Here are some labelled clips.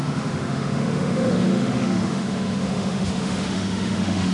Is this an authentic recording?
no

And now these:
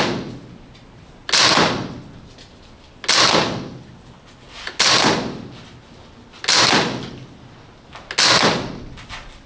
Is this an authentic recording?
yes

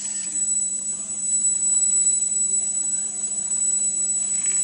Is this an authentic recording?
no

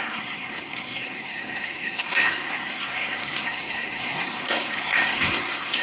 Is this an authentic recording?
no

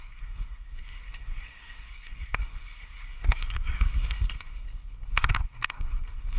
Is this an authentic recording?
no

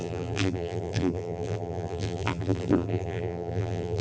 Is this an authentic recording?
no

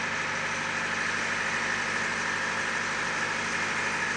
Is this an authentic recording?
yes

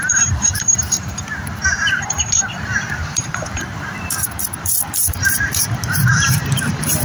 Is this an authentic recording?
no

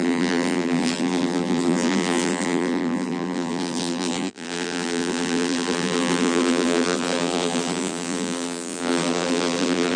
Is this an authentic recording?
no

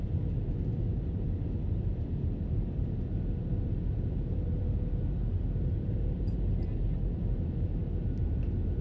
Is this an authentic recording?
no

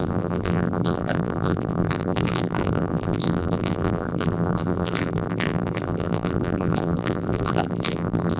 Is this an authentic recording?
no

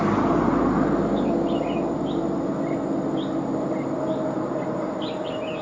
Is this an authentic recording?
yes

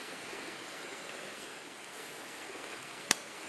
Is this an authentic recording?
no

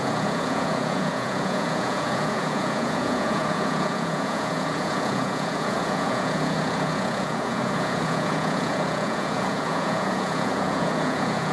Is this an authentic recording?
no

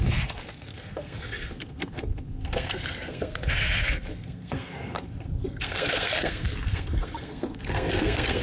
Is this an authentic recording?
no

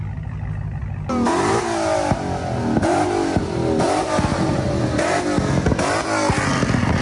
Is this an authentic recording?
yes